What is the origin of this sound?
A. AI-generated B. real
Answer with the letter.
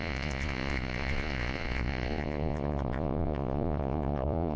A